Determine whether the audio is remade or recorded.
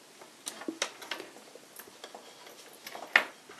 recorded